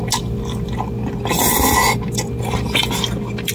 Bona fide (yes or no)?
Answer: yes